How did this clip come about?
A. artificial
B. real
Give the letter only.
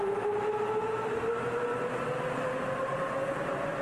B